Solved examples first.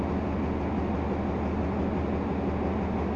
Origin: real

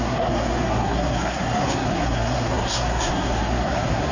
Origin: fake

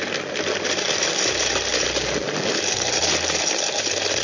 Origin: real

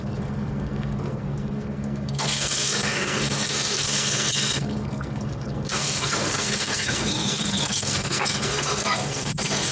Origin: fake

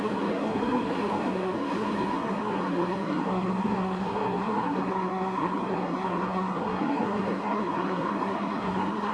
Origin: fake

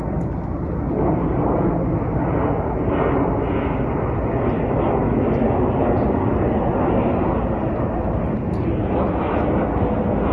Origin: real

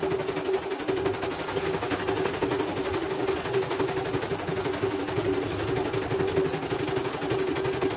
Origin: real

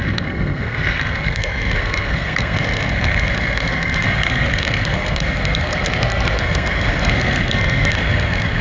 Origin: fake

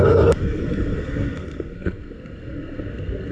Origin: fake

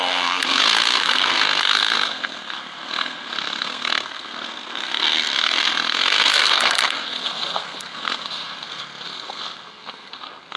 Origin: fake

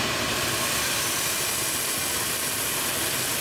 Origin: real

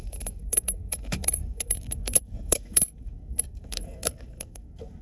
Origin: fake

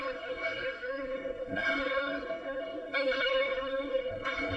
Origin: fake